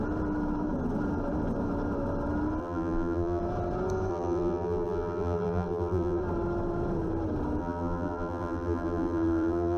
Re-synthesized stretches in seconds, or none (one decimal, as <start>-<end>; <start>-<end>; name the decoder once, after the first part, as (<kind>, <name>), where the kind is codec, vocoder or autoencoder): 2.6-3.4 (vocoder, BigVGAN v2); 4.1-6.2; 7.6-9.8